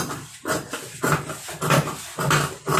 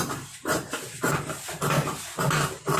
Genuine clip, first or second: first